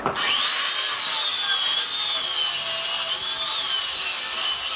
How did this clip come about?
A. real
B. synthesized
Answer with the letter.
A